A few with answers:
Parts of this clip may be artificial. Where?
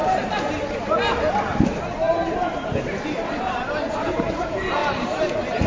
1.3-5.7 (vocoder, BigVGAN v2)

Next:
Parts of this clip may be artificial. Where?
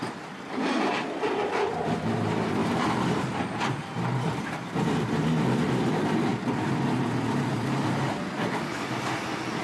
0.0-6.3 (vocoder, BigVGAN v2)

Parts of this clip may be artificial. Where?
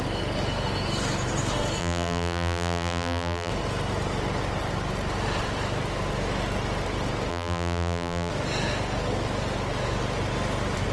1.8-3.5 (vocoder, BigVGAN v2); 7.3-8.3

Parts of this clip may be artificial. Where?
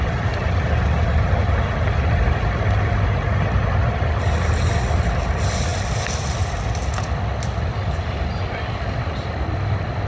none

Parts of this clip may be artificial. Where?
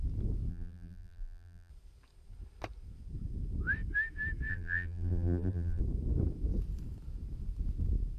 0.5-1.7 (vocoder, BigVGAN v2); 4.5-5.8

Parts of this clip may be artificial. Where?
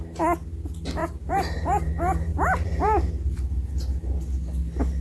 1.0-1.9 (vocoder, BigVGAN v2); 2.3-3.1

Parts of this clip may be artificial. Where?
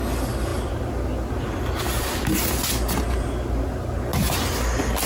none